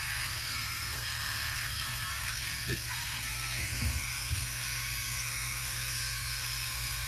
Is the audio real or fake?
fake